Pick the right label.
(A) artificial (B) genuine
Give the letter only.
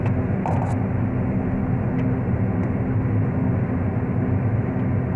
B